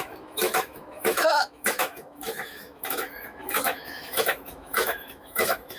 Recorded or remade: remade